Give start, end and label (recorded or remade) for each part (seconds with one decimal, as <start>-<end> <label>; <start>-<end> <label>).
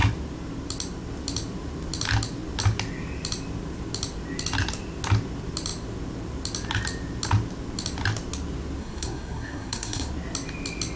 0.0-8.8 recorded; 8.8-10.1 remade; 10.1-11.0 recorded